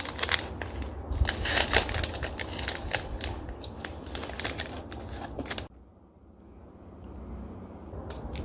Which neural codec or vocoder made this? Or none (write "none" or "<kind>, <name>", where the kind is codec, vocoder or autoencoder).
none